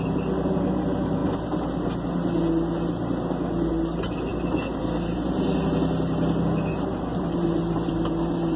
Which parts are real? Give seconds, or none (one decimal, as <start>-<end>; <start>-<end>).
0.0-7.1; 7.9-8.6